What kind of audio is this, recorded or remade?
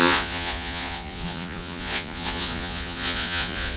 remade